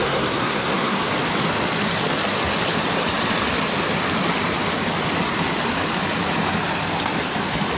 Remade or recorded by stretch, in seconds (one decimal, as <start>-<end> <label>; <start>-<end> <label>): 0.0-1.0 remade; 1.0-7.8 recorded